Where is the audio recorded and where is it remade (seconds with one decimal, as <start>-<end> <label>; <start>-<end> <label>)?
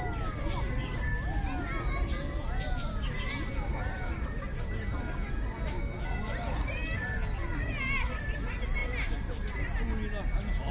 0.0-10.7 recorded